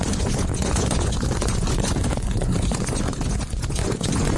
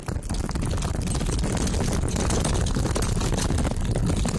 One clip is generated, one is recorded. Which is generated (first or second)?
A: first